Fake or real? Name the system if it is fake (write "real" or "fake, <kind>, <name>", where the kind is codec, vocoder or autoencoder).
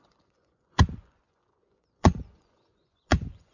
fake, vocoder, Vocos